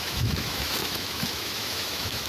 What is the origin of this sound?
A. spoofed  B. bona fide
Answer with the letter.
A